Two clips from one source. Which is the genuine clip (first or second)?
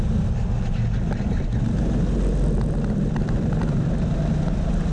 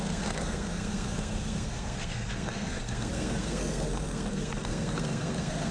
first